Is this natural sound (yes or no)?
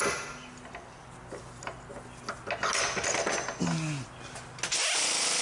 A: yes